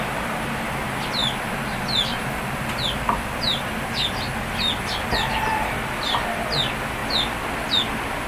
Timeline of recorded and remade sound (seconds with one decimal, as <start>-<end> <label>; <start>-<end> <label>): 0.0-8.3 recorded